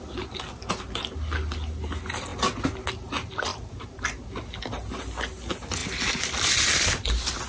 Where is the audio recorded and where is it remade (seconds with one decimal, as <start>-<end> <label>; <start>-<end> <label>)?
0.0-3.5 recorded; 3.5-4.0 remade; 4.0-7.5 recorded